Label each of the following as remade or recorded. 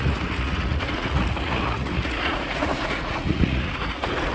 remade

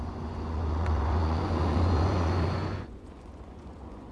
remade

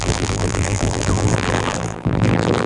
remade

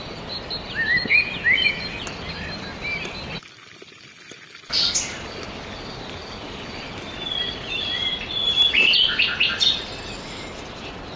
recorded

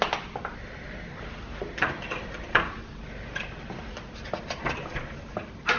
recorded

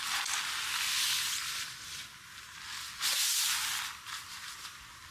recorded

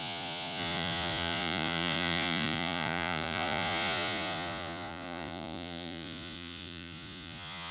remade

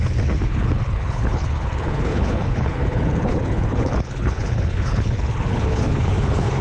remade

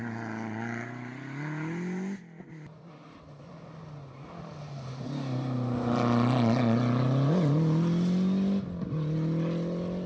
recorded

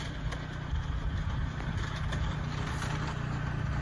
recorded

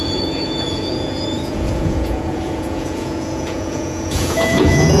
remade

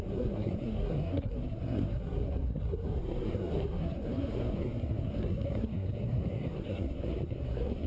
remade